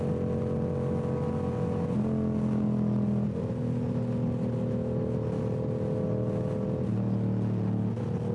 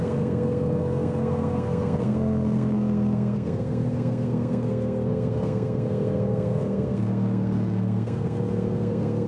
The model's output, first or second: second